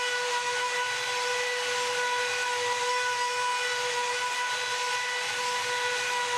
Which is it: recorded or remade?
recorded